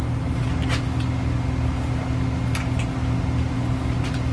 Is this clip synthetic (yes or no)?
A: no